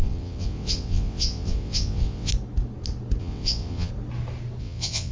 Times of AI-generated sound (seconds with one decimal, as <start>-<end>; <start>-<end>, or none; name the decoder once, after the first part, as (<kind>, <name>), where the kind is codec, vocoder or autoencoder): 0.0-2.3 (vocoder, WaveNeXt); 3.2-3.9; 4.6-5.1